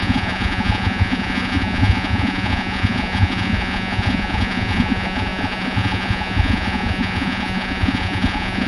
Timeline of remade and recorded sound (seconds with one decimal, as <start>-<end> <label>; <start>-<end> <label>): 0.0-8.7 remade